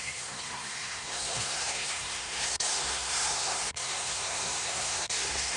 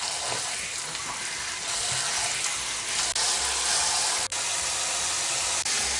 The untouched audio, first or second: second